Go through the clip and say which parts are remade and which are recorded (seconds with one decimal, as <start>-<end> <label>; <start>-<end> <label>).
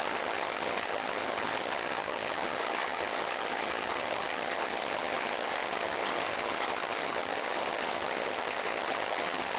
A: 0.0-9.6 remade